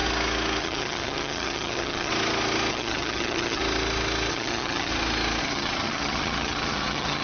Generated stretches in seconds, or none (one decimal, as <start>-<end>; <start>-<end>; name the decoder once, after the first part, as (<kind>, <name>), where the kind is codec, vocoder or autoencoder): 0.6-2.1 (vocoder, HiFi-GAN); 2.7-3.6; 4.3-4.9; 5.4-7.2